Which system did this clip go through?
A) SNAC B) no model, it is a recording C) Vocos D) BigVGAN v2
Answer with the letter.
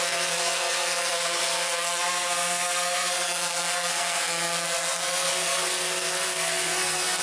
A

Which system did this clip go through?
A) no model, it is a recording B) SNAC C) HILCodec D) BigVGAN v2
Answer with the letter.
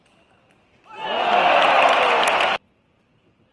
A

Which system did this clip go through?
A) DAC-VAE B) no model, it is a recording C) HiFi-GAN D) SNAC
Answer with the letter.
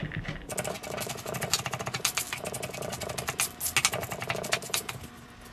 B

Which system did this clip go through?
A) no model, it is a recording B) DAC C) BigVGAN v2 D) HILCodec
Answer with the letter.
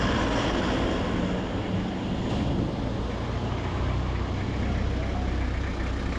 A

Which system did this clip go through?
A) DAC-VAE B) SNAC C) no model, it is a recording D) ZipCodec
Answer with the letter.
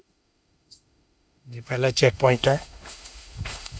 A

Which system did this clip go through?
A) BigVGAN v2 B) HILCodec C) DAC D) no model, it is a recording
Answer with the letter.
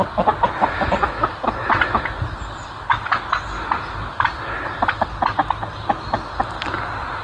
D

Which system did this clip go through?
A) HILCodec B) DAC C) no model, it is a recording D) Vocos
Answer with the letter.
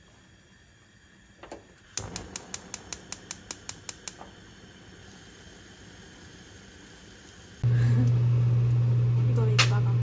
C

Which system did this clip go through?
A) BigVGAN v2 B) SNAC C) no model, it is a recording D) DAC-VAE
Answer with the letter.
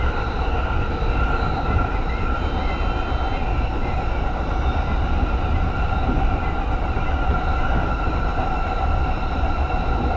C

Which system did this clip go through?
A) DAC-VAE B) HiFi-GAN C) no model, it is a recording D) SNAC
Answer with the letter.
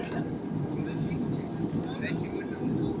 C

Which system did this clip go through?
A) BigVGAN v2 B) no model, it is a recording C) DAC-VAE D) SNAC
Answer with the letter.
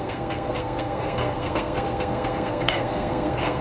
D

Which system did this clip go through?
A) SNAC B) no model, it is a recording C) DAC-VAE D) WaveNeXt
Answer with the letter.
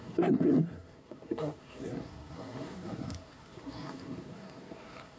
A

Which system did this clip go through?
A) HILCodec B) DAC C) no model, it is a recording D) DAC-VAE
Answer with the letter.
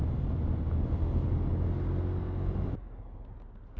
C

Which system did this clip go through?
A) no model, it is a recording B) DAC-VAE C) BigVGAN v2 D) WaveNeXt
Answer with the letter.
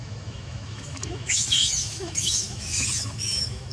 B